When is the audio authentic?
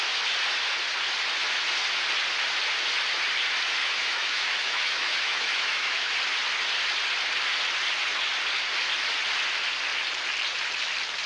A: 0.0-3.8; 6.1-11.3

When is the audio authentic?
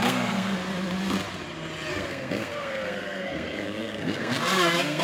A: 0.6-1.9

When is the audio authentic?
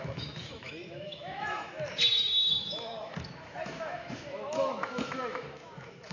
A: none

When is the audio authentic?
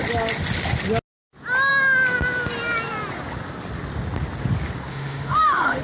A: 0.0-4.9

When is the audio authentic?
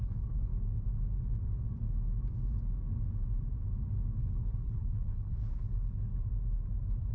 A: 0.5-4.2; 6.1-7.1